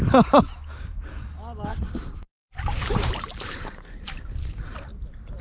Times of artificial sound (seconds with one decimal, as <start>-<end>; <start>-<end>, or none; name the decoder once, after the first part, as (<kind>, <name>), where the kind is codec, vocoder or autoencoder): 1.7-4.9 (vocoder, BigVGAN v2)